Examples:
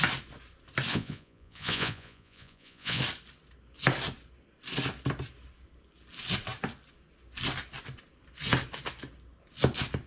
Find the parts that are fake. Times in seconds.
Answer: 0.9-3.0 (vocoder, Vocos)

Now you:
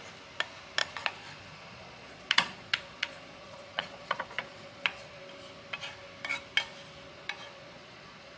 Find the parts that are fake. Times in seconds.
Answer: 0.8-5.2 (vocoder, Vocos); 7.1-8.4

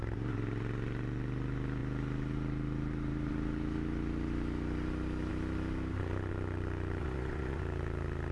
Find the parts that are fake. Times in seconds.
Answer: 7.0-7.6 (vocoder, Vocos)

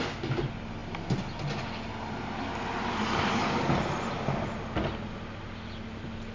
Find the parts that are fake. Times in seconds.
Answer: none

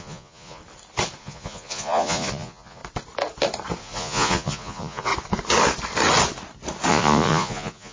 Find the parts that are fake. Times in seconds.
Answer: 0.0-0.6 (vocoder, Vocos); 1.2-2.8; 3.8-5.1; 6.9-7.9

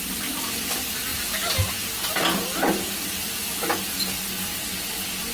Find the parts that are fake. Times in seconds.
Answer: none

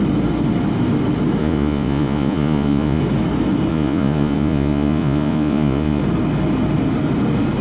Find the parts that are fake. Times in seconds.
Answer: 1.4-3.0 (vocoder, Vocos); 3.7-6.0